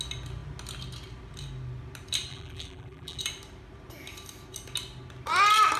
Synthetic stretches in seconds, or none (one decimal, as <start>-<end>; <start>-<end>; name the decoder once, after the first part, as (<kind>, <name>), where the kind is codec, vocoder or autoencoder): 2.3-3.2 (vocoder, BigVGAN v2)